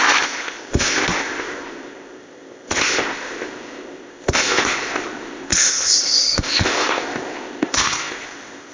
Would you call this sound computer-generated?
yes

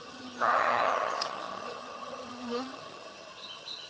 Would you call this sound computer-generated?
yes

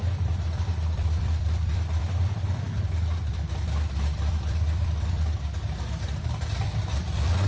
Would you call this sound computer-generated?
yes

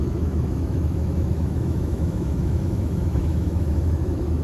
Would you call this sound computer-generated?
yes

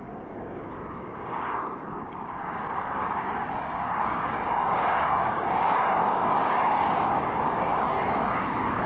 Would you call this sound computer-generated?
yes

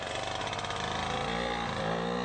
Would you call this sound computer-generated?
no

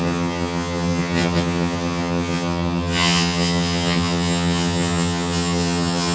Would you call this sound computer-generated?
yes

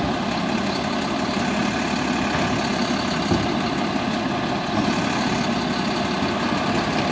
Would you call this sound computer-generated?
no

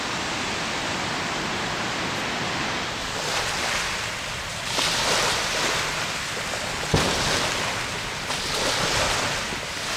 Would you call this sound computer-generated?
no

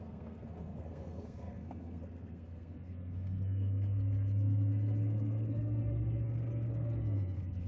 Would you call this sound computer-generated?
yes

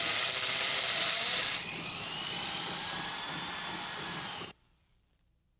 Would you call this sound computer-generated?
yes